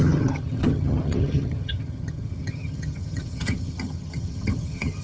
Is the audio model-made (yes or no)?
yes